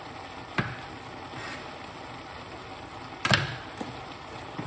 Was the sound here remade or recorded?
recorded